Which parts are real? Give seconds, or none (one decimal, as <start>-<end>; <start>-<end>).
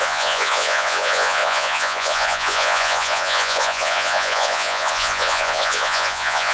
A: none